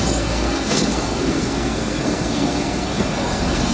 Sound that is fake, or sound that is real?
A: fake